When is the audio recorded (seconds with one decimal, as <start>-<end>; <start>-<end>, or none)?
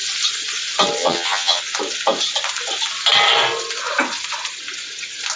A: 0.0-1.0; 1.6-5.4